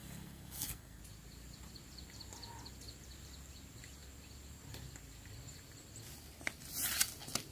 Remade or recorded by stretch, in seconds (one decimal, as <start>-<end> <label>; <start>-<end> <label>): 0.0-1.0 remade; 1.0-7.5 recorded